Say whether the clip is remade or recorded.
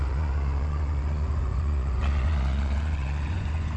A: remade